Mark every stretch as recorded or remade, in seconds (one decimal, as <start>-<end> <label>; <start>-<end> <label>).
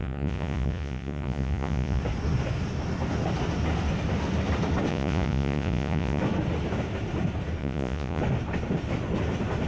0.0-2.0 remade; 2.0-4.9 recorded; 4.9-6.2 remade; 6.2-7.6 recorded; 7.6-8.2 remade; 8.2-9.7 recorded